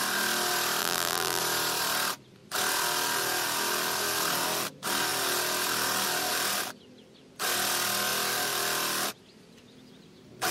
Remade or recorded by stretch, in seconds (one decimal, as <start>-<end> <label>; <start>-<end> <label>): 0.0-0.8 recorded; 0.8-1.4 remade; 1.4-10.5 recorded